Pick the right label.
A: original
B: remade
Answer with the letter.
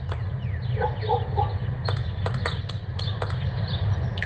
A